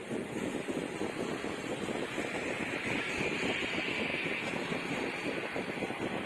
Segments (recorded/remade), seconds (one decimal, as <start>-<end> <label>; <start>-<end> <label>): 0.0-4.1 recorded; 4.1-4.6 remade; 4.6-6.3 recorded